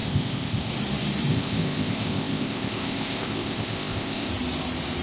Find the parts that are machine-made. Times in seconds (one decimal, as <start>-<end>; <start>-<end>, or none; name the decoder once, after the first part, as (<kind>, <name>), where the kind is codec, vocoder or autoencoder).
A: 0.0-0.7 (codec, ZipCodec); 1.3-4.3

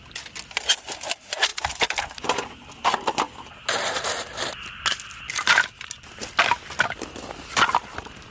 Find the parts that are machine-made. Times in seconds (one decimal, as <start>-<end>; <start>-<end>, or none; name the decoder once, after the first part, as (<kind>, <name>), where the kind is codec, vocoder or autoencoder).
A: none

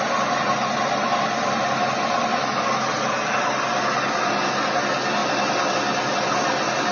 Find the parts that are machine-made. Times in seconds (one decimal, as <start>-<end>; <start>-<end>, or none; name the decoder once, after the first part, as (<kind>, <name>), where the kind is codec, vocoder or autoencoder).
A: none

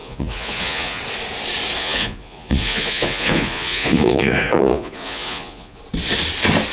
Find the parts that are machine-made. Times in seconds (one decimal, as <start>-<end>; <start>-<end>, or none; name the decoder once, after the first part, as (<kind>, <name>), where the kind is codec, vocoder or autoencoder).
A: 0.0-1.0 (vocoder, Vocos); 1.8-5.8

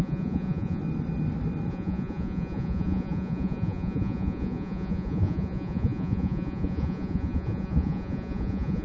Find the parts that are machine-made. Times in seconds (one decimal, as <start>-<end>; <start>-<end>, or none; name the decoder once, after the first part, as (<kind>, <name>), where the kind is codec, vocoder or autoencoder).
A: 0.0-0.8 (vocoder, Vocos); 1.7-8.8

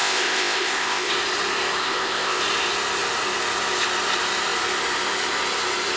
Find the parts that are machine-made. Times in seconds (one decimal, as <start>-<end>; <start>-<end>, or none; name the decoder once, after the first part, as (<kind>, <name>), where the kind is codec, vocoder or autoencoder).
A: 0.0-1.1 (codec, ZipCodec); 1.8-2.4

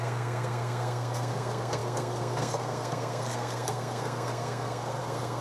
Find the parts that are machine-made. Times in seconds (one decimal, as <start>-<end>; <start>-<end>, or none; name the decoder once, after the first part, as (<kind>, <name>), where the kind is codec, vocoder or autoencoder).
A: 0.0-5.4 (codec, SNAC)